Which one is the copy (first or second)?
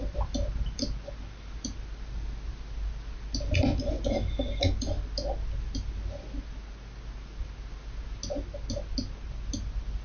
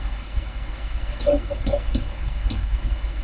second